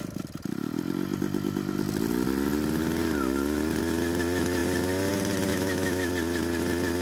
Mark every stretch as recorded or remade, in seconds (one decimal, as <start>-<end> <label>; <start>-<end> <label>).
0.0-5.5 recorded; 5.5-6.1 remade; 6.1-7.0 recorded